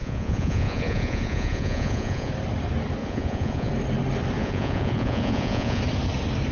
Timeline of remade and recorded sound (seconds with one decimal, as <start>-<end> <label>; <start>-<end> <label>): 0.0-2.3 remade; 2.3-3.0 recorded; 3.0-3.7 remade; 3.7-4.4 recorded; 4.4-5.8 remade; 5.8-6.5 recorded